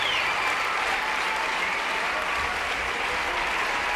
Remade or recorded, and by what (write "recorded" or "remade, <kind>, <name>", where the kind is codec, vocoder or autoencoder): recorded